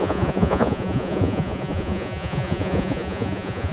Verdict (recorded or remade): remade